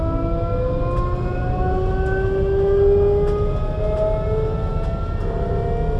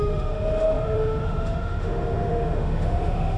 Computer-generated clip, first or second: second